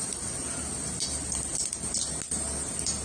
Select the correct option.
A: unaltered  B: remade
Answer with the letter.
A